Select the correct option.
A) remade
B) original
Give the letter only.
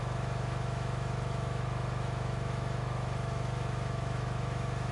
A